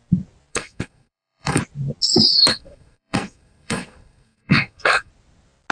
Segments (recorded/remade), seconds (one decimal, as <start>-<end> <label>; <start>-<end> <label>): 0.0-0.5 recorded; 0.5-1.6 remade; 1.6-2.5 recorded; 2.5-5.1 remade; 5.1-5.7 recorded

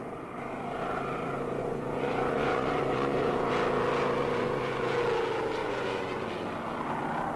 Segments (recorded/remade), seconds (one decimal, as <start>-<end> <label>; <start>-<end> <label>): 0.0-1.6 recorded; 1.6-3.5 remade; 3.5-4.2 recorded; 4.2-5.0 remade; 5.0-5.6 recorded; 5.6-6.2 remade; 6.2-7.4 recorded

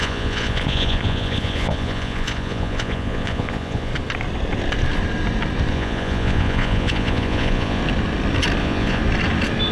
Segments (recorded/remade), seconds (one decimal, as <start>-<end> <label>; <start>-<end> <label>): 0.0-3.9 remade; 3.9-5.7 recorded; 5.7-7.8 remade; 7.8-8.6 recorded; 8.6-9.0 remade; 9.0-9.7 recorded

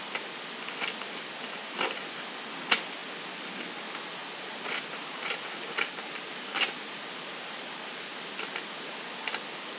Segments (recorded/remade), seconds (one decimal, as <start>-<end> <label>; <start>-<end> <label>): 0.0-9.8 recorded

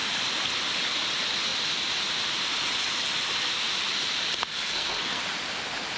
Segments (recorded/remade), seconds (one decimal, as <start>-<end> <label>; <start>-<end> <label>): 0.0-4.5 recorded; 4.5-5.2 remade; 5.2-6.0 recorded

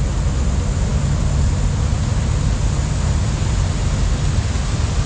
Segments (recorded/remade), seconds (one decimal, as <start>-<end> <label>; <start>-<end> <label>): 0.0-5.1 recorded

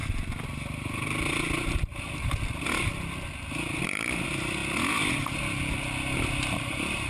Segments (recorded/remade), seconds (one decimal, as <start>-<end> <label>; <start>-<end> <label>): 0.0-3.8 recorded; 3.8-4.6 remade; 4.6-6.4 recorded; 6.4-7.1 remade